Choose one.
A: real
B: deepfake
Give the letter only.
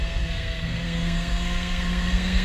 B